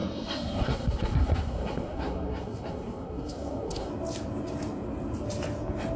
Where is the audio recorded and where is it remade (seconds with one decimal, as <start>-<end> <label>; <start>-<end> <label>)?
0.0-3.9 remade; 3.9-6.0 recorded